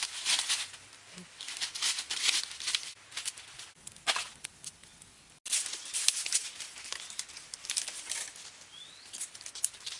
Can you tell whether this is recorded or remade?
recorded